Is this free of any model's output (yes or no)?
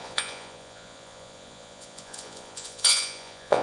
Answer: no